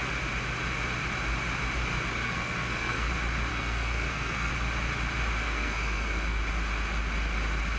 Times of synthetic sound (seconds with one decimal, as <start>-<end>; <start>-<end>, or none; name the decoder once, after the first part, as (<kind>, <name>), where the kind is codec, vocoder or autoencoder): 2.2-3.1 (codec, SNAC); 3.5-4.5; 5.4-6.4